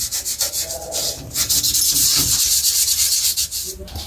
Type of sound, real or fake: real